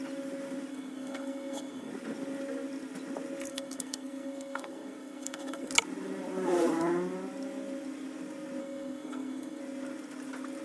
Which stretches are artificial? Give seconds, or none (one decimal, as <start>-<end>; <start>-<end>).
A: 0.7-1.9; 3.5-5.7; 8.6-9.6